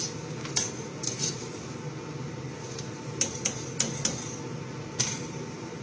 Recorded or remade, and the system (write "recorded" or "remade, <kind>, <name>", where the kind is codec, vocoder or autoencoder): recorded